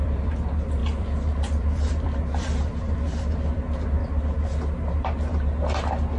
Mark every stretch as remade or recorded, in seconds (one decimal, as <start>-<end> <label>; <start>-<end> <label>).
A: 0.0-4.0 remade; 4.0-6.2 recorded

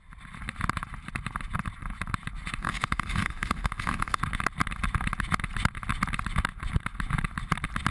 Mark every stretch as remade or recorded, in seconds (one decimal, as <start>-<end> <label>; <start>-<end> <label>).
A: 0.0-2.6 recorded; 2.6-4.2 remade; 4.2-7.9 recorded

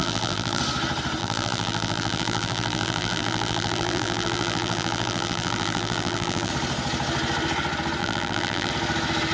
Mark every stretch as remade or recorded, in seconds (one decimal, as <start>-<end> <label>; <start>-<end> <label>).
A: 0.0-0.6 remade; 0.6-1.2 recorded; 1.2-6.5 remade; 6.5-8.0 recorded; 8.0-8.7 remade; 8.7-9.3 recorded

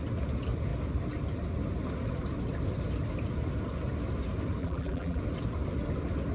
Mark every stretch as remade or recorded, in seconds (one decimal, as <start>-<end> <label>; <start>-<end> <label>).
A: 0.0-4.6 recorded; 4.6-5.2 remade; 5.2-6.3 recorded

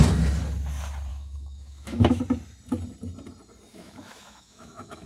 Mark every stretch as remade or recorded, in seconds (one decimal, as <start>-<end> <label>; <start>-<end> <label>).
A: 0.0-1.1 recorded; 1.1-2.2 remade; 2.2-3.7 recorded; 3.7-5.1 remade

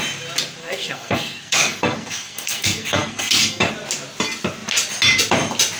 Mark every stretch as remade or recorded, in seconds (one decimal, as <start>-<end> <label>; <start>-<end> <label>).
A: 0.0-0.6 recorded; 0.6-3.7 remade; 3.7-5.8 recorded

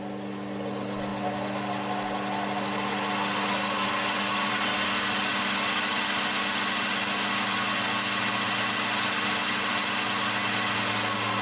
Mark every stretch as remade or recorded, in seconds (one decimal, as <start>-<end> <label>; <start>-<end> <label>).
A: 0.0-11.4 recorded